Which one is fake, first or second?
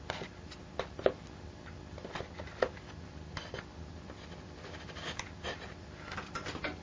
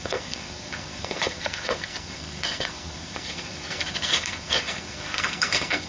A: second